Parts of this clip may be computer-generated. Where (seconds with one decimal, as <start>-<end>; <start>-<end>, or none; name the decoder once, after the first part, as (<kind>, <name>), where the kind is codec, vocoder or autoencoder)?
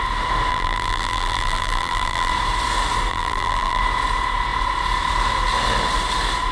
0.5-2.3 (vocoder, BigVGAN v2); 3.1-3.8